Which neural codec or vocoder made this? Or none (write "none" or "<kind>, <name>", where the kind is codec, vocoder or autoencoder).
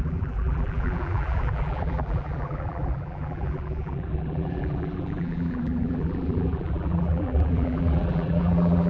vocoder, BigVGAN v2